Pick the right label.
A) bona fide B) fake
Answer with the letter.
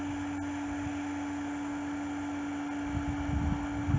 A